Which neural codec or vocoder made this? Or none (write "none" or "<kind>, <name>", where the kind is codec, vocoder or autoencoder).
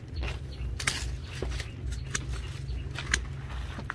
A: none